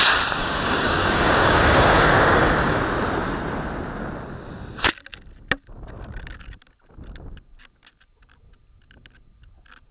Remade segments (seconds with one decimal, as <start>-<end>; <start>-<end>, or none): 0.4-2.8